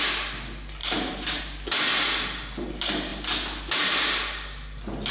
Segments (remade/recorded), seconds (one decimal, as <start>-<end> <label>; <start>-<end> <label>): 0.0-0.8 recorded; 0.8-1.4 remade; 1.4-5.1 recorded